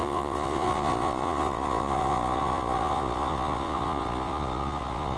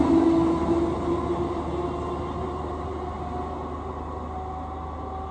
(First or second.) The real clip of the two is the second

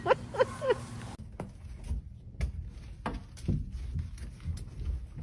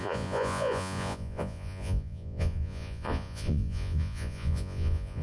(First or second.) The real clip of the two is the first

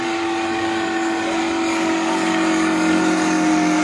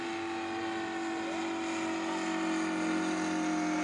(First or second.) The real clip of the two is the second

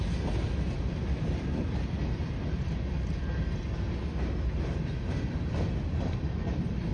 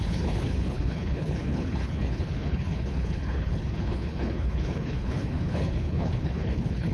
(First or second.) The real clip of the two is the first